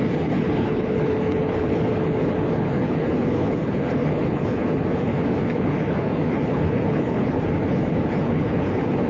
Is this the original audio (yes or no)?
no